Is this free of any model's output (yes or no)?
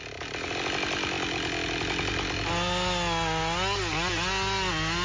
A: yes